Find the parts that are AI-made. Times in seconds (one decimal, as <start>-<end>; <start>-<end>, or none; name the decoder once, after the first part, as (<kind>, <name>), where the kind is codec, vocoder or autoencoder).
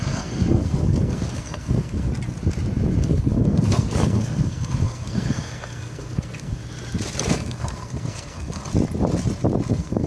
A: 0.0-2.1 (codec, SNAC); 3.0-6.6; 7.3-8.6; 9.7-10.1